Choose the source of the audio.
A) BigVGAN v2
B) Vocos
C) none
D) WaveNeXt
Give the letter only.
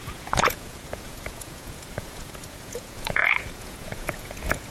B